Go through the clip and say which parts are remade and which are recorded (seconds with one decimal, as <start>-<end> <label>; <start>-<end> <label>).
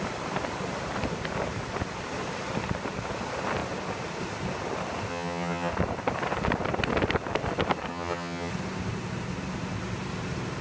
0.0-5.1 recorded; 5.1-5.7 remade; 5.7-7.9 recorded; 7.9-8.5 remade; 8.5-10.6 recorded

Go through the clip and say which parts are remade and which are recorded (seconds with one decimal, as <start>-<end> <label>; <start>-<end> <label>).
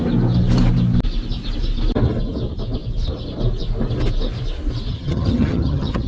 0.0-4.9 recorded; 4.9-6.1 remade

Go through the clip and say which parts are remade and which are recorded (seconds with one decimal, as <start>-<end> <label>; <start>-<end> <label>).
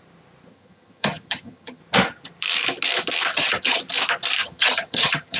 0.0-0.5 recorded; 0.5-1.8 remade; 1.8-3.3 recorded; 3.3-3.8 remade; 3.8-4.4 recorded; 4.4-5.4 remade